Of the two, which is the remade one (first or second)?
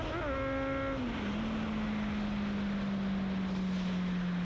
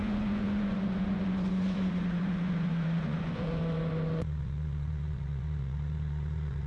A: second